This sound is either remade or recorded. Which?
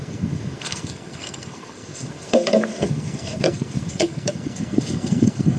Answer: remade